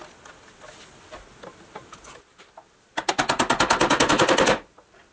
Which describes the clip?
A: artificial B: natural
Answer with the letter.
B